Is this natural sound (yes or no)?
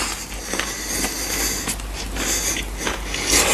yes